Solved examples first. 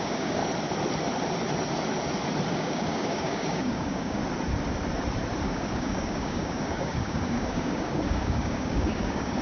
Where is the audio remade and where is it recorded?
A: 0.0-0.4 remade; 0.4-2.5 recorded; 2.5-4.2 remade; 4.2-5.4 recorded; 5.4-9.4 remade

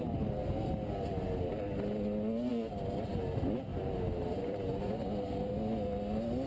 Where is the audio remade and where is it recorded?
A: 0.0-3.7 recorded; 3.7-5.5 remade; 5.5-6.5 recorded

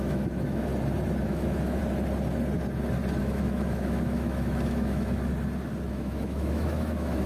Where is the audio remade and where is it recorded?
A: 0.0-0.7 remade; 0.7-1.2 recorded; 1.2-1.8 remade; 1.8-3.2 recorded; 3.2-5.3 remade; 5.3-5.9 recorded; 5.9-7.3 remade

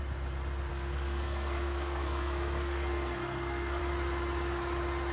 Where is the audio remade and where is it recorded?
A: 0.0-0.7 recorded; 0.7-3.8 remade; 3.8-5.1 recorded

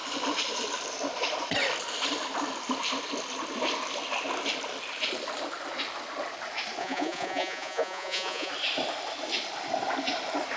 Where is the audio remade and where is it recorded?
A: 0.0-6.8 recorded; 6.8-8.5 remade; 8.5-10.6 recorded

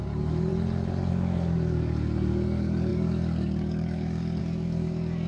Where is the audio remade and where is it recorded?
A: 0.0-0.5 remade; 0.5-1.1 recorded; 1.1-5.3 remade